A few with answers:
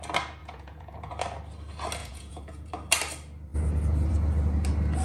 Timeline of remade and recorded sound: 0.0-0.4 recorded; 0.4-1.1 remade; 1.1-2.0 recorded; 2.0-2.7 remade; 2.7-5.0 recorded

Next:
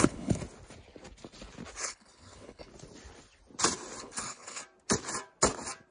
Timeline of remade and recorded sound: 0.0-0.4 remade; 0.4-1.8 recorded; 1.8-2.7 remade; 2.7-4.0 recorded; 4.0-4.6 remade; 4.6-5.9 recorded

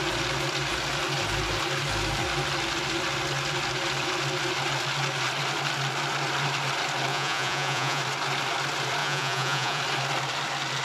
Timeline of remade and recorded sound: 0.0-7.1 recorded; 7.1-8.0 remade; 8.0-9.0 recorded; 9.0-9.8 remade; 9.8-10.8 recorded

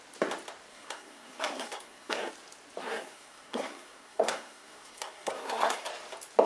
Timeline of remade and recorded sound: 0.0-0.7 recorded; 0.7-2.3 remade; 2.3-2.8 recorded; 2.8-5.9 remade; 5.9-6.5 recorded

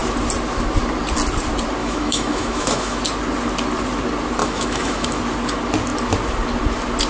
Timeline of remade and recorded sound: 0.0-1.8 recorded; 1.8-3.0 remade; 3.0-4.4 recorded; 4.4-5.2 remade; 5.2-7.1 recorded

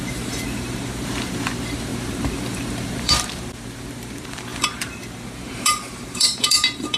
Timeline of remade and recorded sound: 0.0-7.0 remade

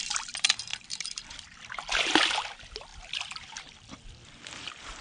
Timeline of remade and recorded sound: 0.0-0.7 recorded; 0.7-1.6 remade; 1.6-2.9 recorded; 2.9-3.9 remade; 3.9-5.0 recorded

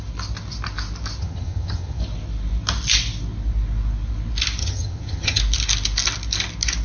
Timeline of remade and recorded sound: 0.0-1.2 recorded; 1.2-2.0 remade; 2.0-4.6 recorded; 4.6-5.4 remade; 5.4-6.8 recorded